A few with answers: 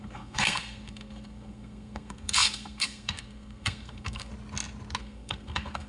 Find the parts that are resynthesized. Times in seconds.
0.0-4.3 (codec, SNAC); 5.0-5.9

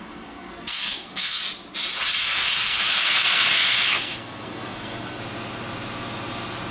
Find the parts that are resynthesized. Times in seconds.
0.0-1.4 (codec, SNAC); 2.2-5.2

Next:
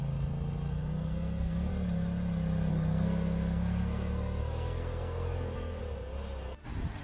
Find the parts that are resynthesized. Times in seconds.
0.7-1.7 (codec, SNAC); 2.7-5.8